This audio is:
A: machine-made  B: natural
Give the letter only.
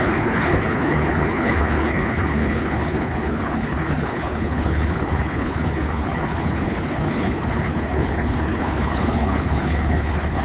A